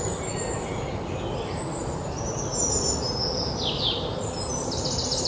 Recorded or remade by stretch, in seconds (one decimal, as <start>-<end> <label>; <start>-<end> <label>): 0.0-4.5 recorded; 4.5-5.3 remade